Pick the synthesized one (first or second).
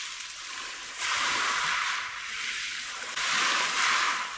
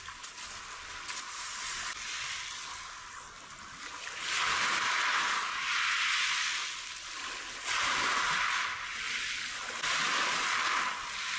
first